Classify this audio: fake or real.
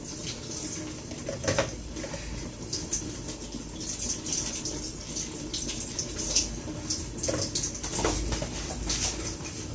real